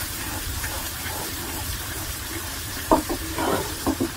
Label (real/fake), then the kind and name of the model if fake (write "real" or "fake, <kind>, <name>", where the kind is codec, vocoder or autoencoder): fake, vocoder, BigVGAN v2